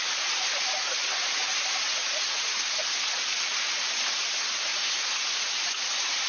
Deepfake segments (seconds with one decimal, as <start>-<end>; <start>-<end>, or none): 2.0-2.6; 4.7-5.7